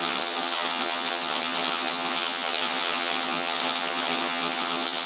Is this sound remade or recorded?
remade